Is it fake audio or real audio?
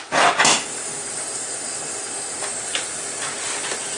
real